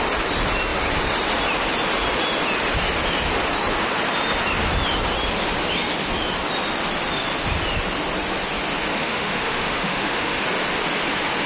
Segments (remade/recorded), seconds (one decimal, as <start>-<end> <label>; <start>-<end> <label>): 0.0-8.9 recorded; 8.9-10.4 remade; 10.4-11.5 recorded